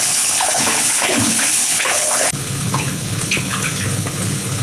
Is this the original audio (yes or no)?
no